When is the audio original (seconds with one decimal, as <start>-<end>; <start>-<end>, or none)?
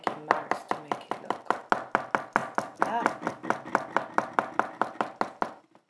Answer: 0.0-5.9